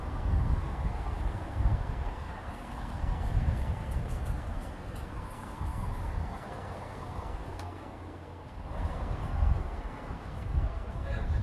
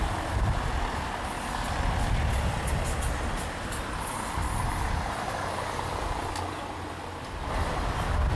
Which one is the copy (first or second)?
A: first